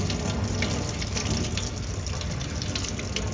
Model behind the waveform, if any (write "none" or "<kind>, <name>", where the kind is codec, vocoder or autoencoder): none